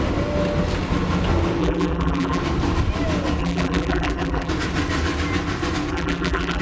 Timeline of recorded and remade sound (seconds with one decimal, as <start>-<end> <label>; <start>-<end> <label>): 0.0-1.6 recorded; 1.6-2.4 remade; 2.4-3.4 recorded; 3.4-4.5 remade; 4.5-5.9 recorded; 5.9-6.6 remade